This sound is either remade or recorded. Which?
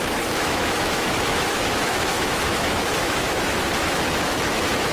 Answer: remade